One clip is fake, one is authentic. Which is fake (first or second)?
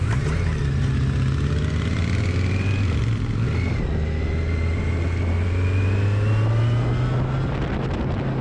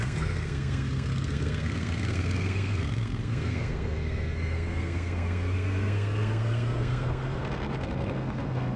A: second